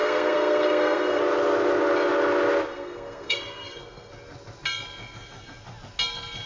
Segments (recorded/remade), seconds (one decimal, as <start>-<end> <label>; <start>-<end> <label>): 0.0-1.2 remade; 1.2-2.7 recorded; 2.7-4.1 remade; 4.1-6.5 recorded